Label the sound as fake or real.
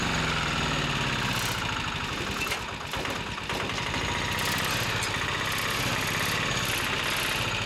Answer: real